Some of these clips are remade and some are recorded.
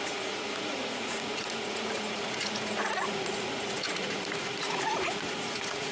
remade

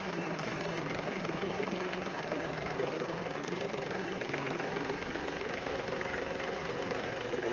remade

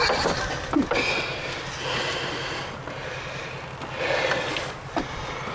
recorded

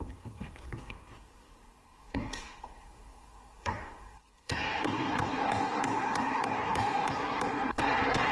remade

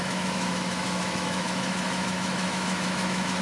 remade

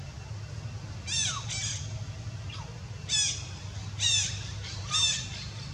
recorded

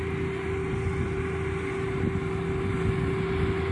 recorded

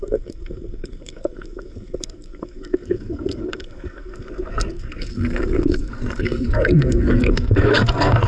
remade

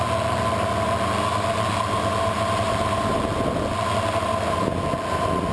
recorded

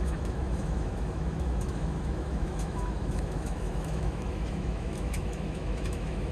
remade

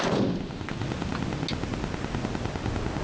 recorded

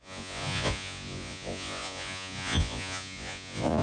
remade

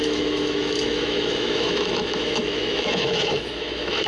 remade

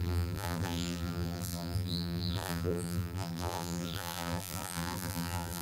remade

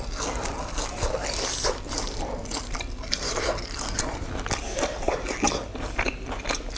recorded